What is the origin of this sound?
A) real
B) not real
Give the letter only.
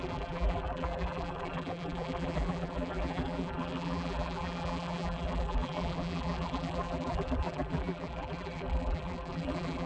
B